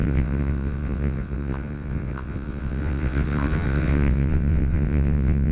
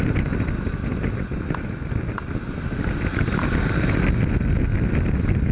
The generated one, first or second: first